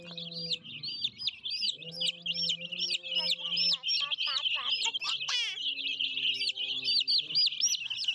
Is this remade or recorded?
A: recorded